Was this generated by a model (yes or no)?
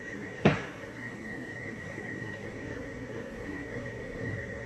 yes